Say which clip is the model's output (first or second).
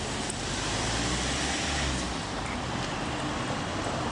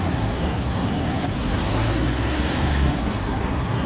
second